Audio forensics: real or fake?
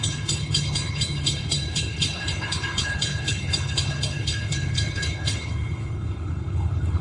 fake